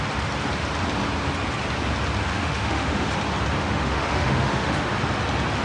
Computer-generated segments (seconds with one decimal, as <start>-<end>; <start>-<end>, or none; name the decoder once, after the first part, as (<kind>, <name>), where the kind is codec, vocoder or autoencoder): 2.3-3.1 (autoencoder, DAC-VAE); 3.6-4.9